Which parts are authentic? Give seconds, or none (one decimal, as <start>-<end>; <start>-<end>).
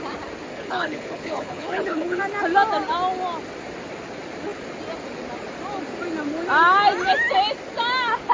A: 0.0-0.5; 2.2-8.3